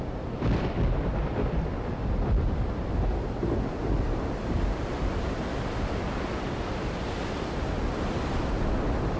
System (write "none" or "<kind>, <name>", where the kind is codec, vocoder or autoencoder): none